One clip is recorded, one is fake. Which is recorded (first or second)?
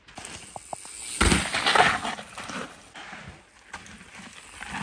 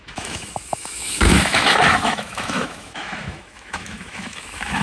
first